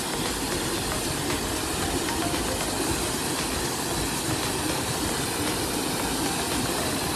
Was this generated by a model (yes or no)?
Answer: no